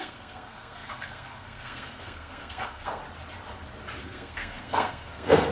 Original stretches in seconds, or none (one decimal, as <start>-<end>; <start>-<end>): 3.0-4.0